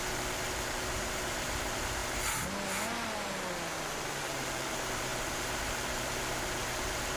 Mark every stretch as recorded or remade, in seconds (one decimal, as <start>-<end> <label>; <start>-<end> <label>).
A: 0.0-2.0 remade; 2.0-4.2 recorded; 4.2-7.2 remade